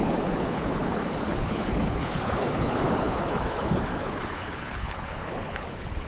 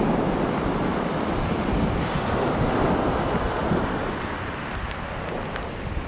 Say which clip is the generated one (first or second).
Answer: first